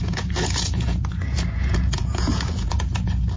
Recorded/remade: remade